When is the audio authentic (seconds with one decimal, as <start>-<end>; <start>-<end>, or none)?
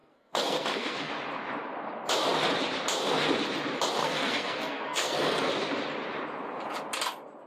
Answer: 1.1-4.0; 5.5-7.5